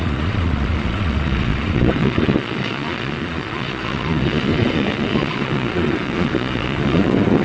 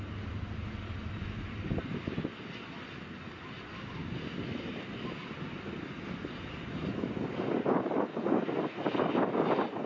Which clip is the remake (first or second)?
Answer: first